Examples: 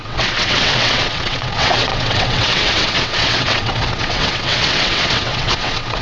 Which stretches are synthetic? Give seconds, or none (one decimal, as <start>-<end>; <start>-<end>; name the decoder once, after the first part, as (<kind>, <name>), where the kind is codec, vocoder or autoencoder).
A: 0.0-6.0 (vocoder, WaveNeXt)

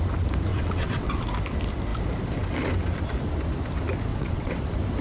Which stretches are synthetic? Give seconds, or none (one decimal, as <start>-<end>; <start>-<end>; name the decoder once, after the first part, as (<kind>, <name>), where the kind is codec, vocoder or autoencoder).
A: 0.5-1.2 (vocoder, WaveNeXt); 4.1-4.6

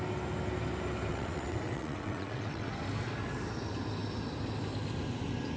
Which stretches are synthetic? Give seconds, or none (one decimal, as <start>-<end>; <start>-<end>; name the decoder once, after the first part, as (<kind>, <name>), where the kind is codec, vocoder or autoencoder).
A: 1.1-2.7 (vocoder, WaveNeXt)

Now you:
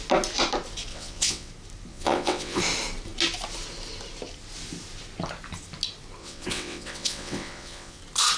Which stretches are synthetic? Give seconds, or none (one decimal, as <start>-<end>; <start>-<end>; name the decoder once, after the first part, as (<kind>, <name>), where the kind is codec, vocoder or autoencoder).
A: 0.9-1.5 (vocoder, WaveNeXt); 1.9-2.6; 6.2-8.0

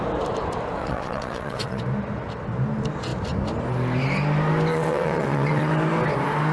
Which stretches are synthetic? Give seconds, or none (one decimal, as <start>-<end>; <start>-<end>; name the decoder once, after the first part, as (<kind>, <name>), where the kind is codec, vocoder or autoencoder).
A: 0.8-1.8 (vocoder, WaveNeXt); 4.7-5.7

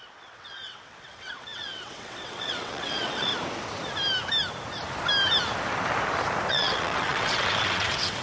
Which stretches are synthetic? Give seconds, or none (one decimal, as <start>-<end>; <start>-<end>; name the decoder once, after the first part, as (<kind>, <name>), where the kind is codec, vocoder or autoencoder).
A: 0.0-3.3 (vocoder, WaveNeXt); 6.5-8.2